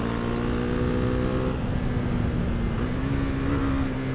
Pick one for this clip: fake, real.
real